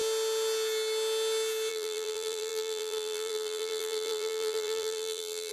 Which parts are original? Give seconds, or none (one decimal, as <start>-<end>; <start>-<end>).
0.0-1.7